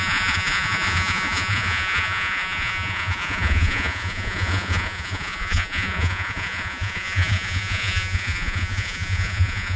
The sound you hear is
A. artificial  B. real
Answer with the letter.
A